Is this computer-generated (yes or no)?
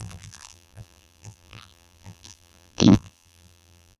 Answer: yes